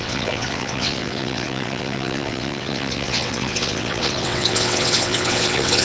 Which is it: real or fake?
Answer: fake